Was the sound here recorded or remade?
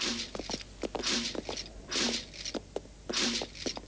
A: recorded